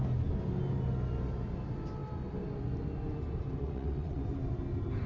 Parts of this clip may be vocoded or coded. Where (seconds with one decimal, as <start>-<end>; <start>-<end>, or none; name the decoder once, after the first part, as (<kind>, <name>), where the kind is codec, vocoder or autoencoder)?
3.6-4.2 (vocoder, WaveNeXt)